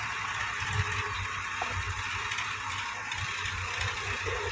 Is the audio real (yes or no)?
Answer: yes